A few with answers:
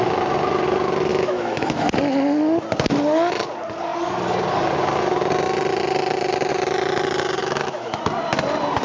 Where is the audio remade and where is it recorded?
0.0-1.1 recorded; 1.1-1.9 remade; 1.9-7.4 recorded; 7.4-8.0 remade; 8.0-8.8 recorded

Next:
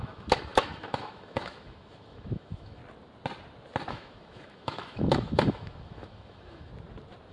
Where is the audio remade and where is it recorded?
0.0-2.8 remade; 2.8-3.9 recorded; 3.9-6.7 remade; 6.7-7.3 recorded

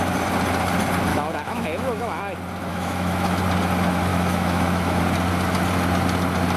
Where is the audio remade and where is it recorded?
0.0-1.1 recorded; 1.1-2.2 remade; 2.2-2.7 recorded; 2.7-3.4 remade; 3.4-4.1 recorded; 4.1-5.0 remade; 5.0-6.6 recorded

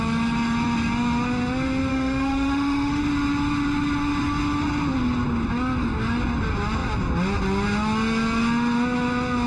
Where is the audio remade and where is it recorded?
0.0-1.9 recorded; 1.9-3.0 remade; 3.0-9.5 recorded